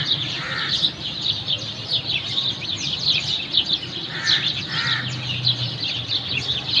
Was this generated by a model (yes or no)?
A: no